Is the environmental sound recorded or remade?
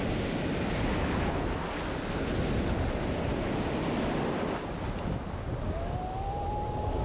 recorded